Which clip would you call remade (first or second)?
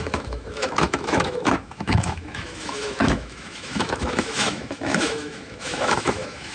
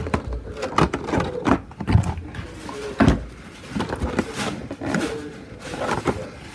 first